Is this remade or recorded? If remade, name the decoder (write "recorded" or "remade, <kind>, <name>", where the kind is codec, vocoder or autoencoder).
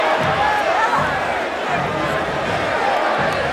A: recorded